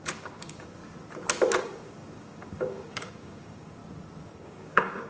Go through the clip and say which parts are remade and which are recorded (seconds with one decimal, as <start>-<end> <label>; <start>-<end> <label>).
0.0-0.8 remade; 0.8-1.6 recorded; 1.6-3.8 remade; 3.8-4.4 recorded; 4.4-5.1 remade

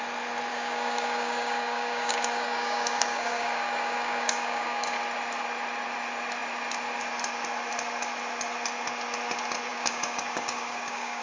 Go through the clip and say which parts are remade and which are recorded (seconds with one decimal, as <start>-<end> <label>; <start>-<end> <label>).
0.0-0.5 recorded; 0.5-5.0 remade; 5.0-9.7 recorded; 9.7-11.2 remade

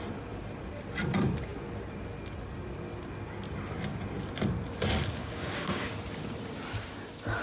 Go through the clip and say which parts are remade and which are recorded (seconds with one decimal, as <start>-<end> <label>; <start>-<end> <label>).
0.0-5.2 recorded; 5.2-5.9 remade; 5.9-7.4 recorded

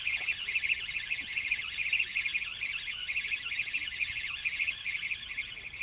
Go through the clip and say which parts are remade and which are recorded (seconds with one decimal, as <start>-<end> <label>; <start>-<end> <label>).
0.0-5.8 recorded

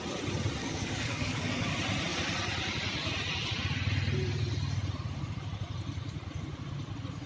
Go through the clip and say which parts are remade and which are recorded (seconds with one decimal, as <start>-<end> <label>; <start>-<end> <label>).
0.0-0.6 recorded; 0.6-1.7 remade; 1.7-7.3 recorded

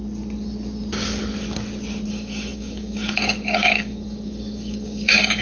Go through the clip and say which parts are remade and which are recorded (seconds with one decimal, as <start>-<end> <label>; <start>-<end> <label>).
0.0-2.1 recorded; 2.1-5.4 remade

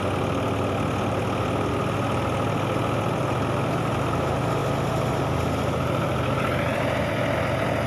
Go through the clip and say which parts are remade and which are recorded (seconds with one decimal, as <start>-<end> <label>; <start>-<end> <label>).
0.0-7.9 recorded